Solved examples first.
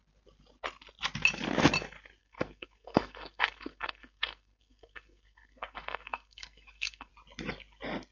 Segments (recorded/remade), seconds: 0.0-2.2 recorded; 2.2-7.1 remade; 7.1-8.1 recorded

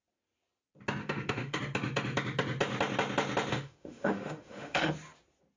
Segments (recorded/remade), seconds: 0.0-1.0 recorded; 1.0-1.6 remade; 1.6-3.5 recorded; 3.5-4.9 remade; 4.9-5.6 recorded

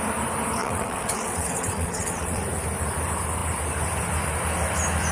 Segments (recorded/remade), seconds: 0.0-0.6 recorded; 0.6-2.4 remade; 2.4-5.1 recorded

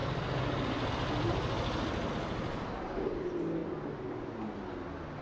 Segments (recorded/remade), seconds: 0.0-5.2 recorded

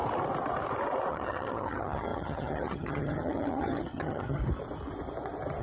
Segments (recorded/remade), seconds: 0.0-1.1 recorded; 1.1-4.4 remade; 4.4-5.6 recorded

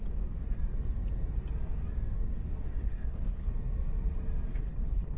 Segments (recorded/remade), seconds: 0.0-2.8 recorded; 2.8-3.5 remade; 3.5-4.5 recorded; 4.5-5.2 remade

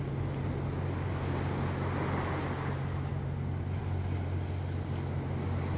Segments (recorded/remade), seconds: 0.0-5.8 recorded